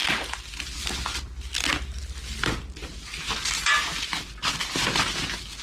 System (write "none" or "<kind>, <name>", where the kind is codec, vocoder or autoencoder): none